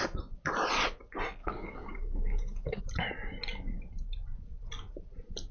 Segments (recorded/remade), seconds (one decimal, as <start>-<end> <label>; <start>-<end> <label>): 0.0-1.4 recorded; 1.4-2.8 remade; 2.8-5.5 recorded

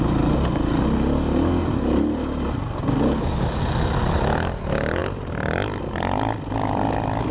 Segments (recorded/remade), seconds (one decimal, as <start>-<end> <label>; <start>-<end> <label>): 0.0-7.3 recorded

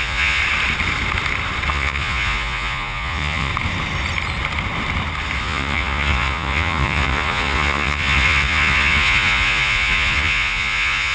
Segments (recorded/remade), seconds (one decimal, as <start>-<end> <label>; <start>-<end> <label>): 0.0-0.4 remade; 0.4-1.7 recorded; 1.7-3.5 remade; 3.5-5.4 recorded; 5.4-11.1 remade

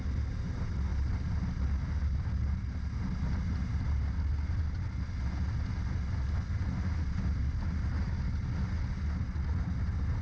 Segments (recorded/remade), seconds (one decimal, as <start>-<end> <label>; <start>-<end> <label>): 0.0-10.2 recorded